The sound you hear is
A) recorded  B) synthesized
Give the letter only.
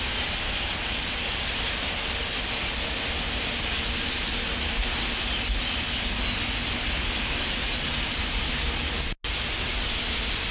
A